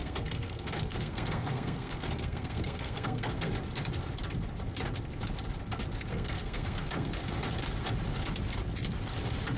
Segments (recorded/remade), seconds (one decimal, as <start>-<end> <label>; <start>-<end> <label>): 0.0-3.5 remade; 3.5-6.1 recorded; 6.1-7.2 remade; 7.2-9.6 recorded